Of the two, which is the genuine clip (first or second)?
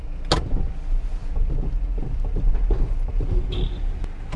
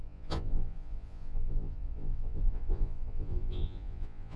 first